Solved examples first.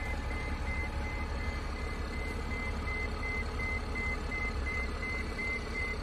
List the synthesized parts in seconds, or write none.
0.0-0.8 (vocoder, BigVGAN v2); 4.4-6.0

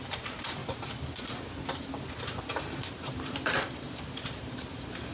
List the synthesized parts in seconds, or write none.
0.0-0.6 (vocoder, BigVGAN v2); 2.9-5.1

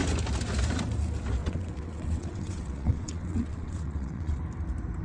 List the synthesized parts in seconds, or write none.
1.4-4.4 (vocoder, WaveNeXt)

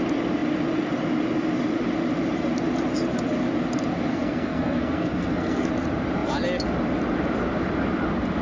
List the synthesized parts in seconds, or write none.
4.1-5.7 (codec, SNAC)

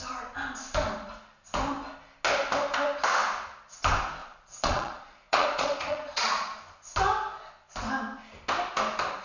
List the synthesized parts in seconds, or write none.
4.2-6.6 (vocoder, Vocos)

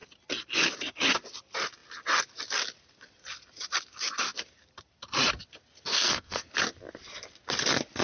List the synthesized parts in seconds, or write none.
5.9-6.5 (codec, SNAC)